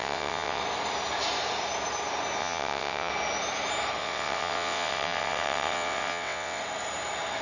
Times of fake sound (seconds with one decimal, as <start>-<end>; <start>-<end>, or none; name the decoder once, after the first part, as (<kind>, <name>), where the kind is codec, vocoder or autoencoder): 0.0-0.6 (vocoder, WaveNeXt); 2.4-3.1; 4.0-6.6